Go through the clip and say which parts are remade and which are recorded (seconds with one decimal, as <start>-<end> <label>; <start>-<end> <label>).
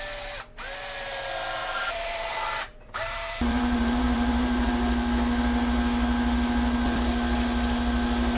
0.0-1.6 recorded; 1.6-2.3 remade; 2.3-2.7 recorded; 2.7-4.7 remade; 4.7-8.4 recorded